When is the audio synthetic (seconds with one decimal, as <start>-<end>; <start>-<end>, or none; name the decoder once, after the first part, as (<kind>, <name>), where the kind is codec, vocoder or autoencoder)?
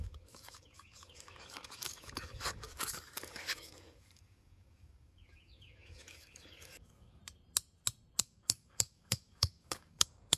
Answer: 0.0-7.2 (codec, DAC); 8.2-10.4